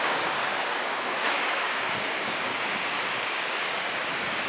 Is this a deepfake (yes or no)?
yes